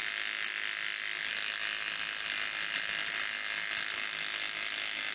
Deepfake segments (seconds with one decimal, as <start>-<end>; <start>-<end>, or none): none